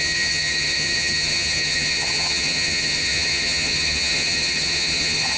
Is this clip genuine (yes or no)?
no